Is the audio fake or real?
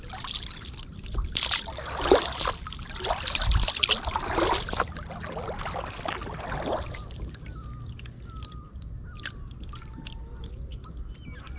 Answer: real